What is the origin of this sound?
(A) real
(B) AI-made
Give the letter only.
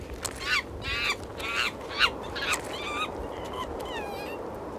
A